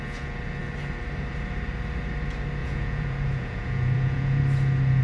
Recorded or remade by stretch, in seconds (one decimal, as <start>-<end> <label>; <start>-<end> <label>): 0.0-2.6 recorded; 2.6-4.4 remade; 4.4-5.0 recorded